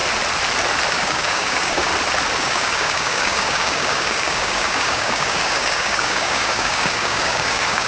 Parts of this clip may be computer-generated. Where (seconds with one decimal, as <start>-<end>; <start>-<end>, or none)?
0.9-1.9; 2.4-7.9